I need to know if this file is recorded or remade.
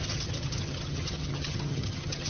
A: remade